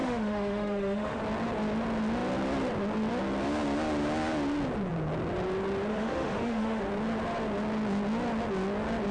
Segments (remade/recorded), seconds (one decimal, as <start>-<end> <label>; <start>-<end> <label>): 0.0-1.2 remade; 1.2-5.9 recorded; 5.9-6.8 remade; 6.8-9.1 recorded